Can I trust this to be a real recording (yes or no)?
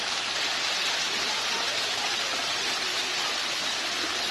yes